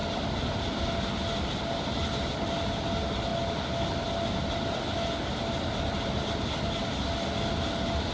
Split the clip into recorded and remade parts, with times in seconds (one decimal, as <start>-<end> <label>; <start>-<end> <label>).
0.0-8.1 recorded